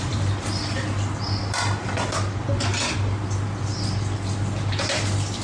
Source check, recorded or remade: recorded